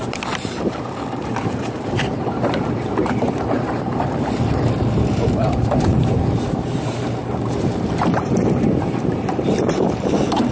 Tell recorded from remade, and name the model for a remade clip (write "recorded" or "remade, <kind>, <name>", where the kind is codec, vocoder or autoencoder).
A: remade, vocoder, BigVGAN v2